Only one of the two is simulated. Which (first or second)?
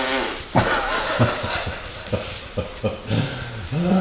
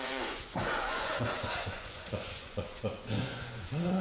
second